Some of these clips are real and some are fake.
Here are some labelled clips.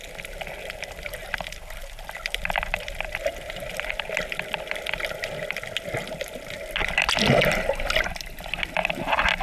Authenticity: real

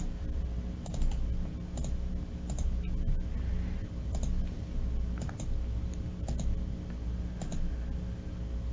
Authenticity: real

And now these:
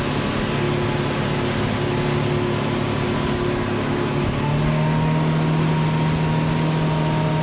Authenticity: real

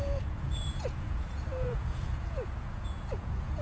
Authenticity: fake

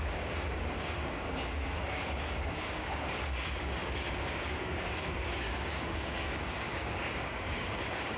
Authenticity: fake